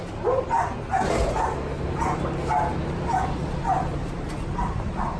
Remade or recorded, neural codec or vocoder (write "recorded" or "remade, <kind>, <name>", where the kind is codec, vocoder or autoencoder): recorded